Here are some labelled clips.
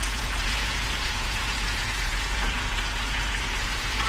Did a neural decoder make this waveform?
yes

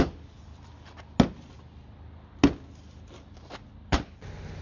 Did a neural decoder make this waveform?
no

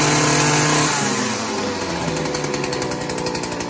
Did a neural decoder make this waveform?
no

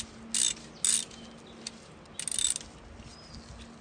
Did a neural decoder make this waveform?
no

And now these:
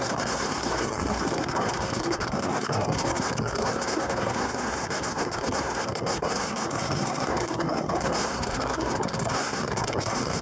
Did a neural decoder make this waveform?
yes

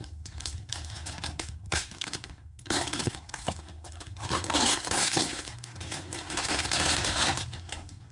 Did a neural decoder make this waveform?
yes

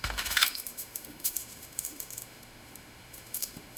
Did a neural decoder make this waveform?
yes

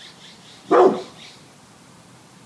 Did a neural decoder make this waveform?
no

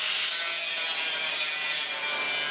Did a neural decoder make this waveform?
no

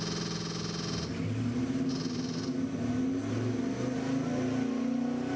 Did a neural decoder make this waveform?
no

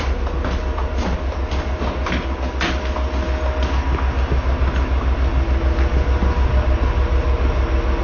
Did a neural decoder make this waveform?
no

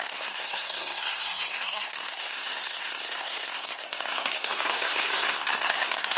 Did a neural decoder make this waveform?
yes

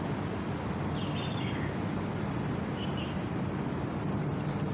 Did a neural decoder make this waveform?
no